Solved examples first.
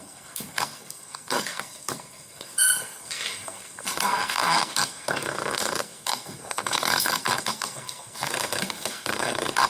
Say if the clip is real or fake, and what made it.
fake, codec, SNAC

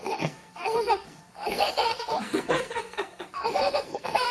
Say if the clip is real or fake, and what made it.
fake, codec, SNAC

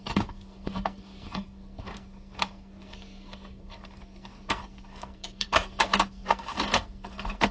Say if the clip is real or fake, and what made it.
fake, codec, SNAC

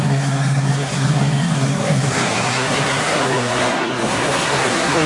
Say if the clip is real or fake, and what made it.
fake, codec, SNAC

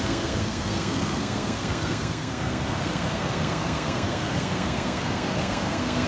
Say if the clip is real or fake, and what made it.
fake, codec, SNAC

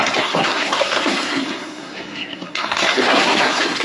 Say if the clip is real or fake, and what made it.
fake, codec, SNAC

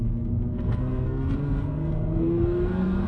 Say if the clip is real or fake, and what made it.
fake, codec, SNAC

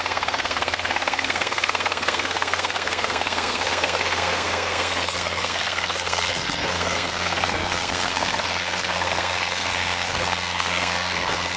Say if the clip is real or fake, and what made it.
fake, codec, SNAC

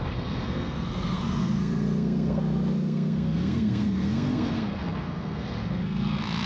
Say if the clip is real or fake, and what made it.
fake, codec, SNAC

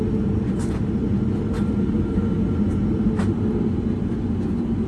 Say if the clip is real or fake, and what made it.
real